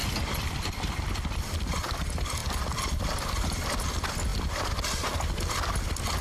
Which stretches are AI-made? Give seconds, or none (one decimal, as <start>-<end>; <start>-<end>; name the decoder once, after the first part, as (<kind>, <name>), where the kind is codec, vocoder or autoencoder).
none